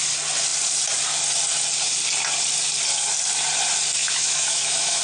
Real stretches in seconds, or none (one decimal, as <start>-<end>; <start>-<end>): 0.0-4.0